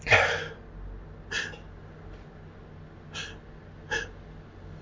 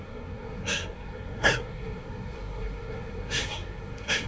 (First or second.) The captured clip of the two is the first